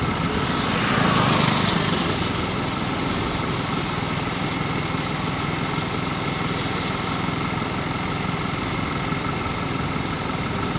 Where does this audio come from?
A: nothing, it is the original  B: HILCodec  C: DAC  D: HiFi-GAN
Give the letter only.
A